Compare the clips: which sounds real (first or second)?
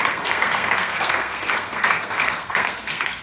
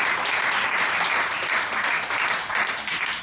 second